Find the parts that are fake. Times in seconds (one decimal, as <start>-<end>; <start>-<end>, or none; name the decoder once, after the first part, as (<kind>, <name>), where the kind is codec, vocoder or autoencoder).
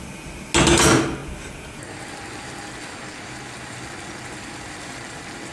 none